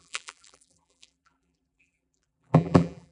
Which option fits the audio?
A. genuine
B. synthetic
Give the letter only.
B